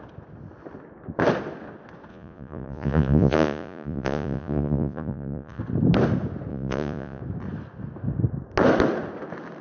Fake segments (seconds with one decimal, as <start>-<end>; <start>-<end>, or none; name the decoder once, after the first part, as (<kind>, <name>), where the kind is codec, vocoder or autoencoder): 2.1-5.6 (vocoder, Vocos); 6.5-7.2